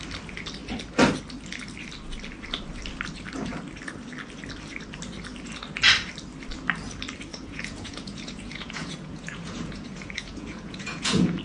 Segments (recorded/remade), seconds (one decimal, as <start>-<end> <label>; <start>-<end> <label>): 0.0-7.3 recorded; 7.3-11.4 remade